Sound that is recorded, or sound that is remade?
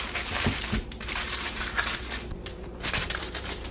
remade